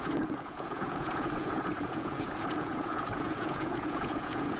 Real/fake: fake